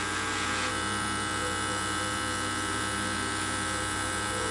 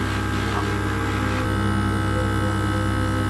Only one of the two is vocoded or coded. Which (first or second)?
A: first